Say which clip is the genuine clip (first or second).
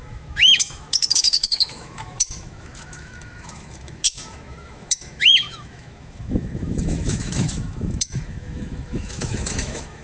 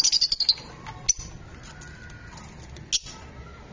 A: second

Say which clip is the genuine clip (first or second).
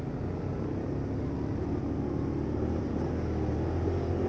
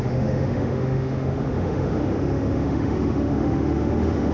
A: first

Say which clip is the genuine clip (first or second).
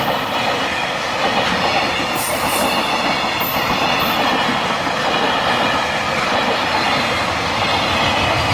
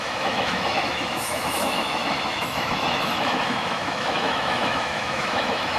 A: first